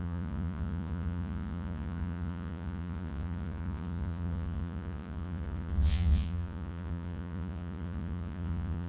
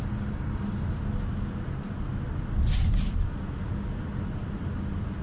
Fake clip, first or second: first